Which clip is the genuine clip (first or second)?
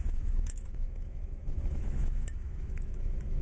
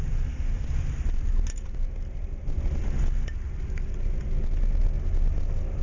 second